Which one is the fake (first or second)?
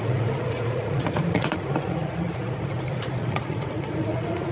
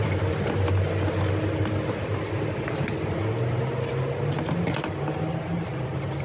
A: first